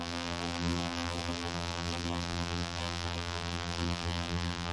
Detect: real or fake fake